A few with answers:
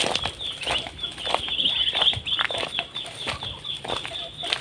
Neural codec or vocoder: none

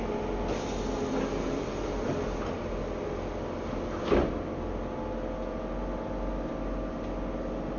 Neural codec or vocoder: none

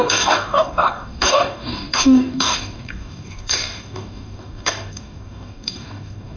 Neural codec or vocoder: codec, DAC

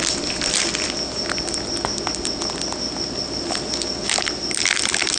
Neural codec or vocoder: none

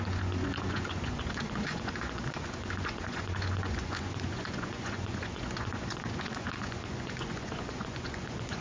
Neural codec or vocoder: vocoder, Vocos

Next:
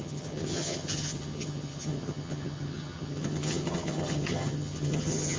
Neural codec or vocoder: vocoder, HiFi-GAN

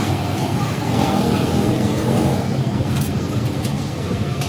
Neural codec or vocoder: codec, SNAC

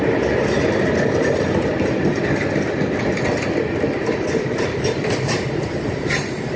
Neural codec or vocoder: none